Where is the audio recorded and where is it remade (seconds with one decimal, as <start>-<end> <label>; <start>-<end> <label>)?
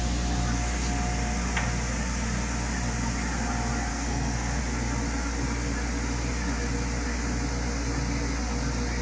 0.0-3.9 recorded; 3.9-4.6 remade; 4.6-9.0 recorded